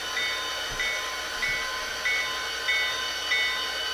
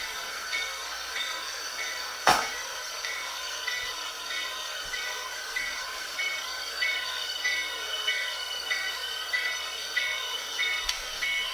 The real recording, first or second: first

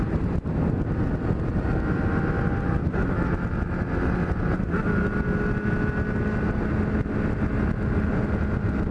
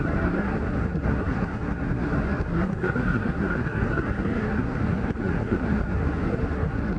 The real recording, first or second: first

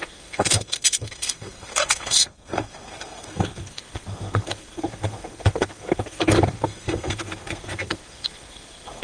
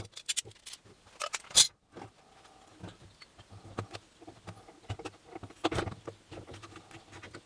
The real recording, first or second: second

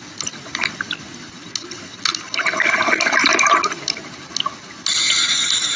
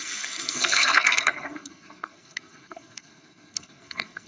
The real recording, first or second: first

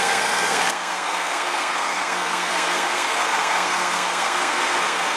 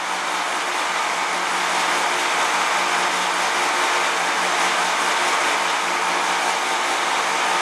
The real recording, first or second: second